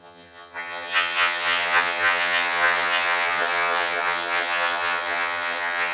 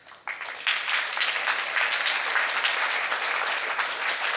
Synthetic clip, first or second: first